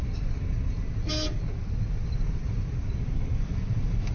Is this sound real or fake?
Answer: real